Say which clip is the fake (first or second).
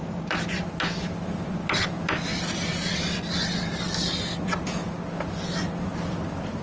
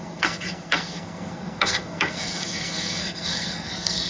second